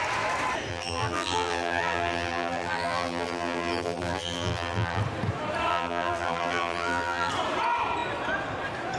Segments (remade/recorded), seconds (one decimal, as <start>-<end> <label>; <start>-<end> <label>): 0.0-0.7 recorded; 0.7-5.0 remade; 5.0-5.7 recorded; 5.7-7.3 remade; 7.3-9.0 recorded